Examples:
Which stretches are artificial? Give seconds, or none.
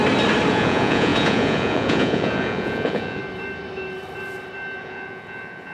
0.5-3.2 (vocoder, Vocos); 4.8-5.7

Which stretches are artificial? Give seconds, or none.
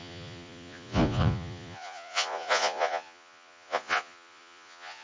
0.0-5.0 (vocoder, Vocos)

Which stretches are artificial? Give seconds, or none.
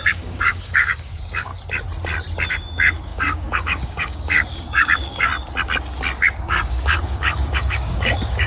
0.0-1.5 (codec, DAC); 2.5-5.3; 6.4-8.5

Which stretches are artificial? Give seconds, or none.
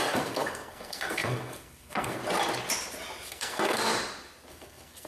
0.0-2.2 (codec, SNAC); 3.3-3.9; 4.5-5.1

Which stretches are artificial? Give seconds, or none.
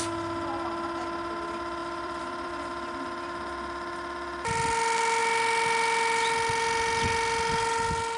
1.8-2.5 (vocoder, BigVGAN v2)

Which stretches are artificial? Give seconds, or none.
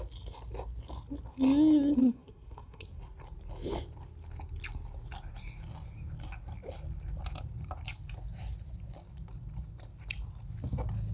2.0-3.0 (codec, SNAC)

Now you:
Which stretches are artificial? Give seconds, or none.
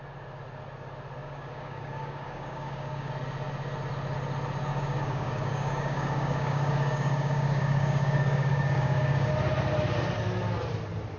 1.2-3.1 (codec, DAC); 4.7-9.3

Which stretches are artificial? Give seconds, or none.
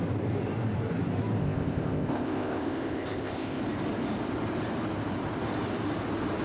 1.4-3.6 (codec, ZipCodec)